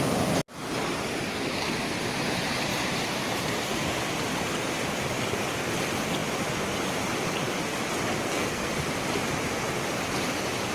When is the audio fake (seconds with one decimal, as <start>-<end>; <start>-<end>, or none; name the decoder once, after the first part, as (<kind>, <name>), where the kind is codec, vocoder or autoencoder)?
8.2-8.7 (codec, SNAC)

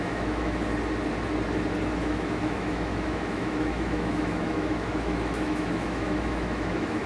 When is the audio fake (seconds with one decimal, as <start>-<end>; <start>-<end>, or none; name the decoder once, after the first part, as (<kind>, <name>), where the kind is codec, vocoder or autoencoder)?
0.0-0.7 (autoencoder, DAC-VAE); 2.0-7.1

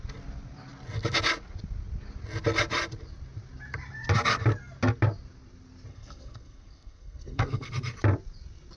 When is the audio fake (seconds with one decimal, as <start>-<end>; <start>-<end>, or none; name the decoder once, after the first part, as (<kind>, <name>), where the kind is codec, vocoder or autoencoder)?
5.9-7.7 (codec, SNAC)

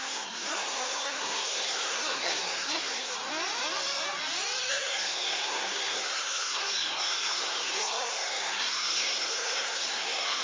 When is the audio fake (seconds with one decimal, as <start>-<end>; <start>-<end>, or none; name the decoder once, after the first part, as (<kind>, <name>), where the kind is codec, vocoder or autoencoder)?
0.0-3.1 (codec, SNAC); 4.7-10.4

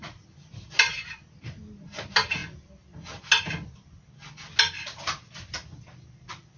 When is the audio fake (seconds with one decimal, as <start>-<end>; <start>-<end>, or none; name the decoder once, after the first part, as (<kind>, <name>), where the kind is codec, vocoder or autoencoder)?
none

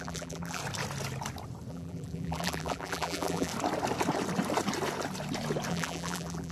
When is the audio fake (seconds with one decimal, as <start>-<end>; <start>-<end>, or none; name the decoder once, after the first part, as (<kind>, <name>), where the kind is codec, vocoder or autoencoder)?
0.0-0.6 (vocoder, BigVGAN v2); 1.7-3.5; 5.7-6.5

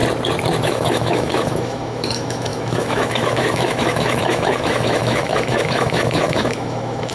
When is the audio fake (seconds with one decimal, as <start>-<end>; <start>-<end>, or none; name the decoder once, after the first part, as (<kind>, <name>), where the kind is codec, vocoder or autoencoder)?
0.6-7.1 (autoencoder, DAC-VAE)